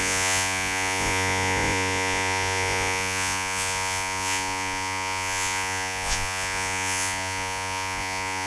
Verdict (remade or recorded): remade